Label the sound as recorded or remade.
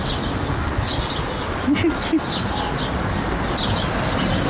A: recorded